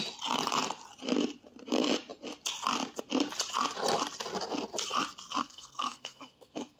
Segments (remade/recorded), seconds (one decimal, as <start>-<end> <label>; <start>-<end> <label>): 0.0-5.4 recorded; 5.4-6.8 remade